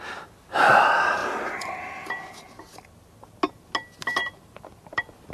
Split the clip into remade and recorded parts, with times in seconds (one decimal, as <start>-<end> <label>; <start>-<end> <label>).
0.0-5.3 recorded